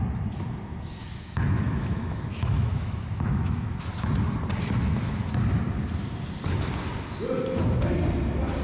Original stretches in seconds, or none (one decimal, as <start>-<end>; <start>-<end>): 0.0-1.0; 3.9-8.6